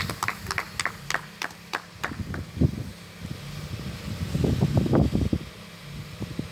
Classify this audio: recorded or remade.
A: recorded